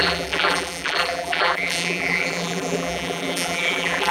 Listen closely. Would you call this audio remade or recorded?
remade